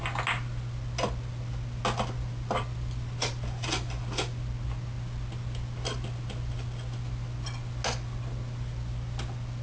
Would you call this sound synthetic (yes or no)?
no